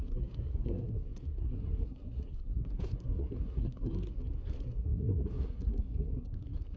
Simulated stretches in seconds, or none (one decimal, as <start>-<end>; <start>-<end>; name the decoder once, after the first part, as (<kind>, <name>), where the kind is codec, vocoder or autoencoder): 0.0-6.8 (codec, SNAC)